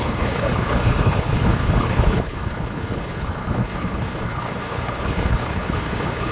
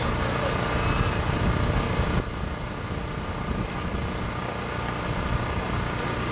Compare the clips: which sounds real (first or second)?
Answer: second